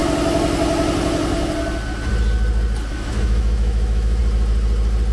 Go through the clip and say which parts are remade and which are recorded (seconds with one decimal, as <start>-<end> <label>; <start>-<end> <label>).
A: 0.0-2.9 recorded; 2.9-4.2 remade; 4.2-5.1 recorded